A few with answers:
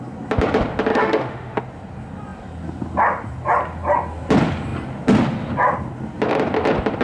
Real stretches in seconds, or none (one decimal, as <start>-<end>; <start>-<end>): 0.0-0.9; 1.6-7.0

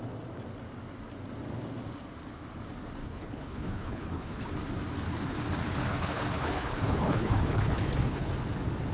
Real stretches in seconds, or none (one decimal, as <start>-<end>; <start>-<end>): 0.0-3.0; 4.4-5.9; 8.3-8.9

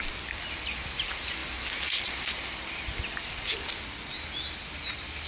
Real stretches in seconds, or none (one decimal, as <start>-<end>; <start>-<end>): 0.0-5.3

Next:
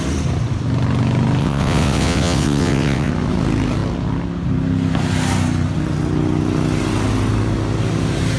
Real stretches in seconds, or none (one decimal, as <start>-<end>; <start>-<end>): 0.0-1.4; 3.1-8.4